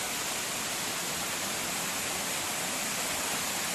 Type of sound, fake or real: real